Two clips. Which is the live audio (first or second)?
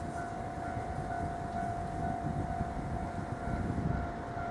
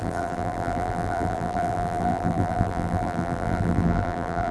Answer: first